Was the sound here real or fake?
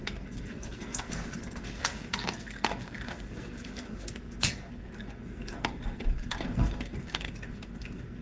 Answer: fake